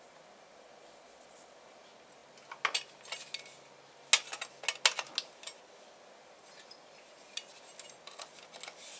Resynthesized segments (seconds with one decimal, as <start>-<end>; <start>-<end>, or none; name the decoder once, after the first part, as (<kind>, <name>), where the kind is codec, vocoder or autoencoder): none